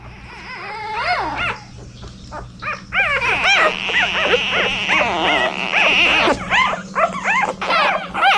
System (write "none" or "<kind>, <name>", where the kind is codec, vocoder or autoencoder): none